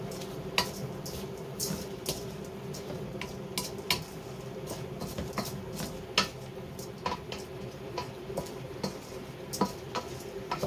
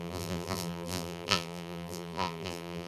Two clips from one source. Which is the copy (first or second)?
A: second